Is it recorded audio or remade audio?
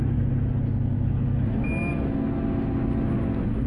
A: recorded